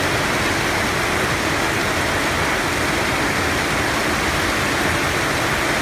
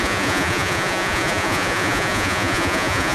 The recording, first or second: first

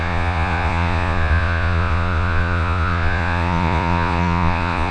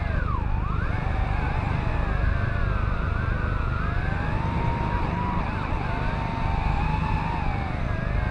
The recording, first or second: second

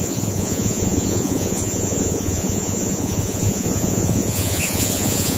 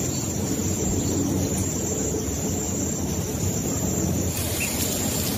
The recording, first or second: second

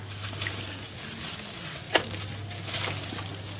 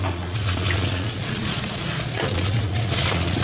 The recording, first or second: first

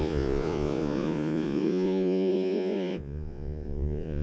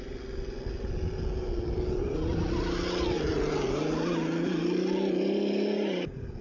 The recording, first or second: second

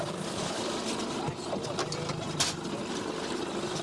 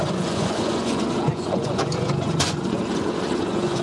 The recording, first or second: first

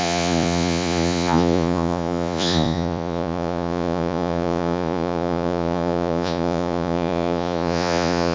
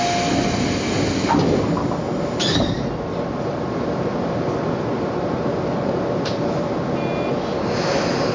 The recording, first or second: second